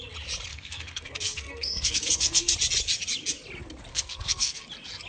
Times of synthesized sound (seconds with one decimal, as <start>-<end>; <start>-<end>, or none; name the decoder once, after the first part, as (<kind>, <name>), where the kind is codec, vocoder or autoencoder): 0.5-2.5 (codec, SNAC); 3.9-4.6